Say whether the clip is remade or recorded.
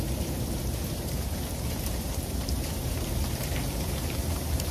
remade